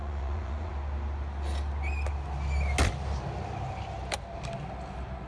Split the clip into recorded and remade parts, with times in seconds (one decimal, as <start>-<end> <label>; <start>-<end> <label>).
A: 0.0-0.7 remade; 0.7-5.3 recorded